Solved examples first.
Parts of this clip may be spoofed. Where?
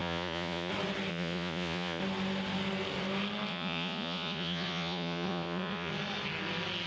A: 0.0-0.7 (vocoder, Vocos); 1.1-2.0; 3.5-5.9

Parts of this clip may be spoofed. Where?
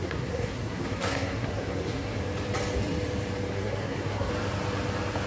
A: 0.0-2.2 (codec, SNAC); 3.5-4.3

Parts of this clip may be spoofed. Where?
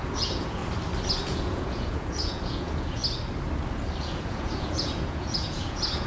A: 0.0-0.6 (vocoder, Vocos); 1.2-3.0; 4.0-6.1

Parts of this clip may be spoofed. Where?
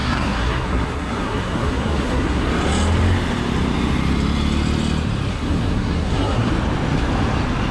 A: 0.0-2.5 (codec, SNAC); 5.3-6.5